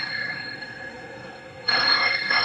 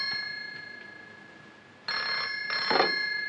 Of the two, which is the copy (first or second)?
first